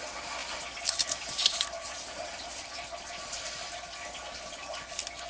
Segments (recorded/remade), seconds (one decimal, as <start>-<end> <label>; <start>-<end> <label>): 0.0-0.4 recorded; 0.4-3.6 remade; 3.6-5.3 recorded